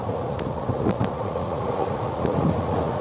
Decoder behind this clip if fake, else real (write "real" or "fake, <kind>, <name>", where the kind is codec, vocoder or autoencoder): fake, vocoder, Vocos